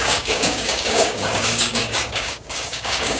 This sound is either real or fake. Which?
fake